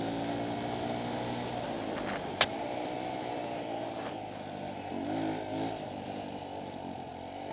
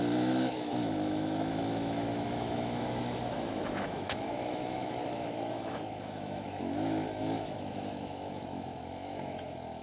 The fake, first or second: second